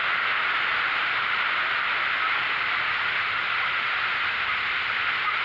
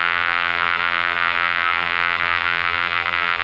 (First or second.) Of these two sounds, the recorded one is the first